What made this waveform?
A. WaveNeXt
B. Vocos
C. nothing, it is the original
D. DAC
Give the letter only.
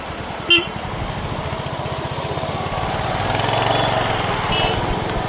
C